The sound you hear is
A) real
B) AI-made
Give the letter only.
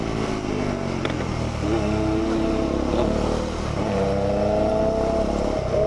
A